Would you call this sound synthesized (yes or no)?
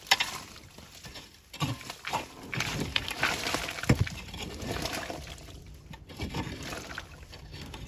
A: yes